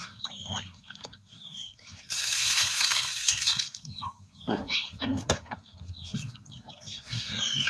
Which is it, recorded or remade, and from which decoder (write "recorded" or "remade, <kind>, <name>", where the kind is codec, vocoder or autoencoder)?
remade, codec, SNAC